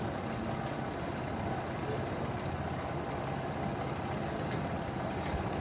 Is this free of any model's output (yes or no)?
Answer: yes